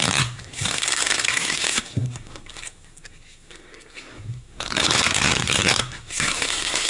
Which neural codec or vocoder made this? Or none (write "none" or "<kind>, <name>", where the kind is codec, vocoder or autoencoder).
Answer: codec, SNAC